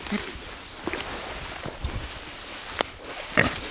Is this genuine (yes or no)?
yes